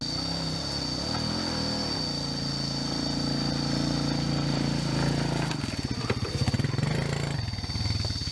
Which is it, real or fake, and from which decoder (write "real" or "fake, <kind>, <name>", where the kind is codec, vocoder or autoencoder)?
real